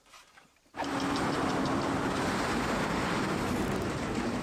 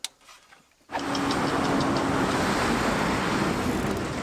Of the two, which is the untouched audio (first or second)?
second